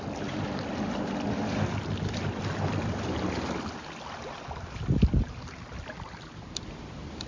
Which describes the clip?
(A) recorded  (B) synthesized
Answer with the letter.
A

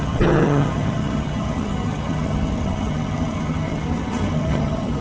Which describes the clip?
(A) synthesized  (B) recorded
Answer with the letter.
A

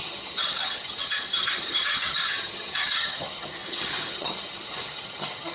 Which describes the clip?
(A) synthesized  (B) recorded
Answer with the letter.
A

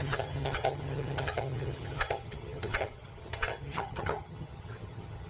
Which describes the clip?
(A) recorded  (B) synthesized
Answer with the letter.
B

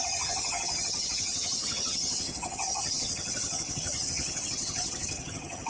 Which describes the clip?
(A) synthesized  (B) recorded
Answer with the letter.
A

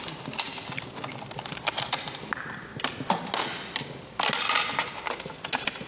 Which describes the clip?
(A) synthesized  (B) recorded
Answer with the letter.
B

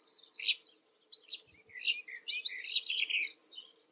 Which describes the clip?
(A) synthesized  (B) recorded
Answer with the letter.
B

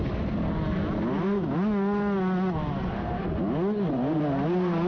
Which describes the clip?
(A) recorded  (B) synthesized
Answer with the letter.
A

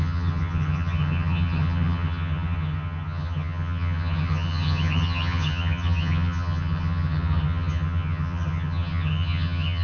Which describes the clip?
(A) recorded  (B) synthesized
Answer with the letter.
B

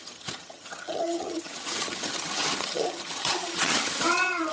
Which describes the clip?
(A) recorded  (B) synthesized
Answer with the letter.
B